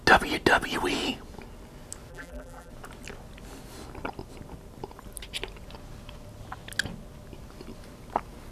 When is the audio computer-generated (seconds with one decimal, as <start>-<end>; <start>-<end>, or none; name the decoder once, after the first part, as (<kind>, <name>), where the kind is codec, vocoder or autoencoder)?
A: 2.1-2.7 (vocoder, BigVGAN v2)